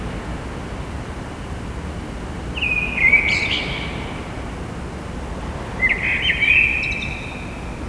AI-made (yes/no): no